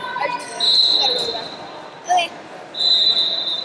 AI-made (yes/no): no